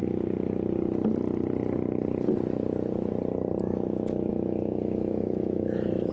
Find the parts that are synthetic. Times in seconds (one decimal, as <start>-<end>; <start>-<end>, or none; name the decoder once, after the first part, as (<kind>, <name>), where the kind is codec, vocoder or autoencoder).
3.6-6.1 (autoencoder, DAC-VAE)